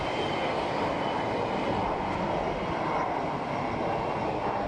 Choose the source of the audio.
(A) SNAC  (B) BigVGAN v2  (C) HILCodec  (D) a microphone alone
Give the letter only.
D